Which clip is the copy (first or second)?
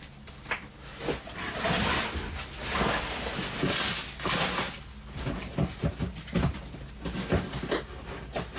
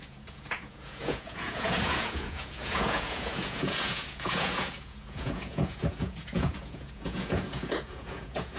second